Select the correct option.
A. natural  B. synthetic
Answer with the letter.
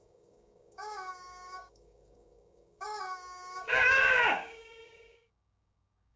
B